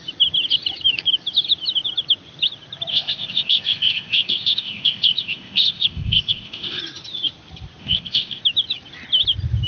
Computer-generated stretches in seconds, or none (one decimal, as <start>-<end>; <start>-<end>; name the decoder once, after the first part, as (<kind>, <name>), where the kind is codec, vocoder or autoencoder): 2.9-6.8 (codec, ZipCodec); 7.8-8.4